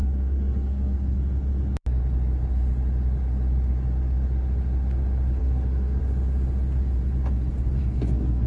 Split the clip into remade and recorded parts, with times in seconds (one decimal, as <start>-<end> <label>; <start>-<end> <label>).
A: 0.0-1.2 remade; 1.2-5.4 recorded; 5.4-6.0 remade; 6.0-7.8 recorded; 7.8-8.5 remade